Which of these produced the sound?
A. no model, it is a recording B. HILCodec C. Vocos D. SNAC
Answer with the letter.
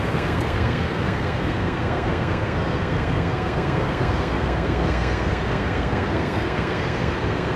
D